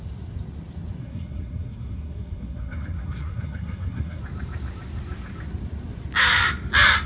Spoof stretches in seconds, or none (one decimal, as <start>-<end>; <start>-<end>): 1.0-4.2